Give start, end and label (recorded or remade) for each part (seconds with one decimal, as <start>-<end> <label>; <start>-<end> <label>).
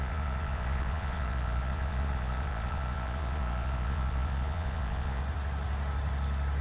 0.0-5.2 remade; 5.2-6.6 recorded